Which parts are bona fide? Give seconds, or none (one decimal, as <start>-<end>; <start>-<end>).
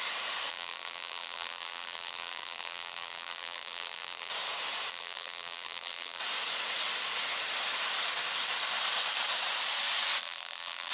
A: 0.0-0.5; 4.3-4.9; 6.2-10.2